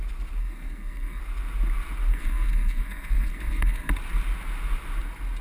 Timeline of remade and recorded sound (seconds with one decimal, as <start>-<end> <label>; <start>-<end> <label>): 0.0-0.4 recorded; 0.4-1.2 remade; 1.2-2.1 recorded; 2.1-3.9 remade; 3.9-5.4 recorded